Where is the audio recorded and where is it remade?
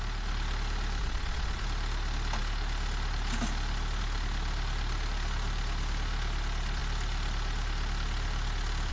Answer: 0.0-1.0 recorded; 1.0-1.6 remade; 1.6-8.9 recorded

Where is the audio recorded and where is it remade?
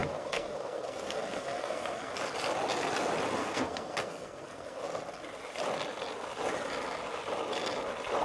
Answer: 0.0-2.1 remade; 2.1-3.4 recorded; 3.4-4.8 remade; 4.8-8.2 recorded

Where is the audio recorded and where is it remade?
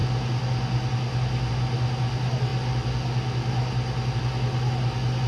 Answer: 0.0-5.3 recorded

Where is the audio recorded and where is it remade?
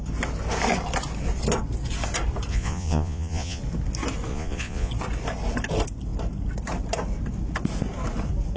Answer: 0.0-2.5 recorded; 2.5-3.6 remade; 3.6-4.3 recorded; 4.3-4.9 remade; 4.9-8.6 recorded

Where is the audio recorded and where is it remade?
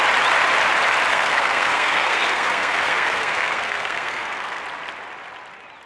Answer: 0.0-1.1 recorded; 1.1-4.6 remade; 4.6-5.9 recorded